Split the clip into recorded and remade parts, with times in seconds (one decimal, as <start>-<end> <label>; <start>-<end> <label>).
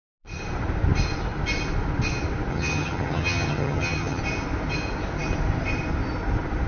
0.0-2.5 recorded; 2.5-4.2 remade; 4.2-6.7 recorded